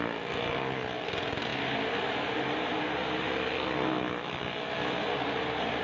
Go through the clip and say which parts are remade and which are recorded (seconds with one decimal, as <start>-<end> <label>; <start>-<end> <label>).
0.0-5.8 recorded